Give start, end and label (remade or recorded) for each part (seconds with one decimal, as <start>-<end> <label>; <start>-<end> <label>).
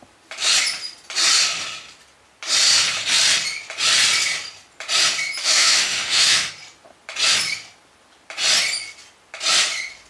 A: 0.0-5.4 recorded; 5.4-6.5 remade; 6.5-10.1 recorded